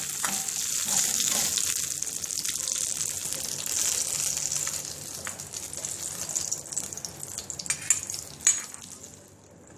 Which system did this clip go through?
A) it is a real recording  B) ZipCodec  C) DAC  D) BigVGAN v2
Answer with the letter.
A